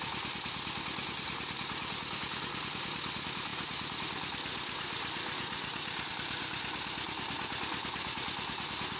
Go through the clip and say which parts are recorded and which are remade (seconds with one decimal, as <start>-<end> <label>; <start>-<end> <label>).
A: 0.0-9.0 recorded